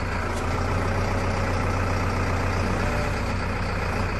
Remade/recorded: recorded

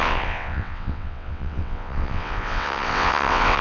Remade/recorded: remade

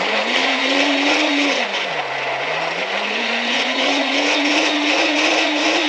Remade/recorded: remade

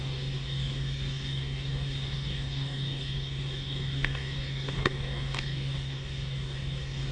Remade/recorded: remade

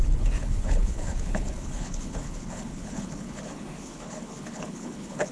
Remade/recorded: remade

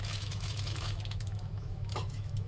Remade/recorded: remade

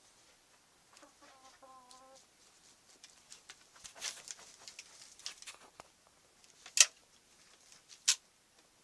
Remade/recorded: recorded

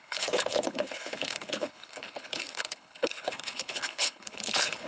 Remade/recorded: remade